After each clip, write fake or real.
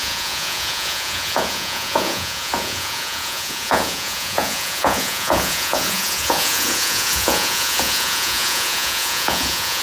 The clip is fake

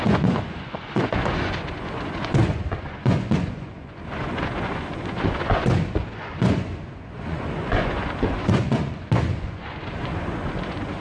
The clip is fake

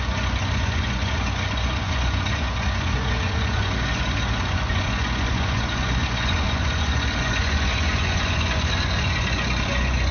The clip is fake